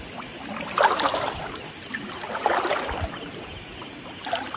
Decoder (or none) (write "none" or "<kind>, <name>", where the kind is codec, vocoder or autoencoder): none